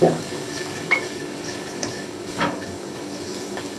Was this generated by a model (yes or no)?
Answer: yes